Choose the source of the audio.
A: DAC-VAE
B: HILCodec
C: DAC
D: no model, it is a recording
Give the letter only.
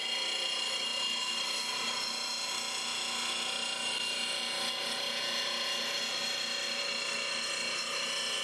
D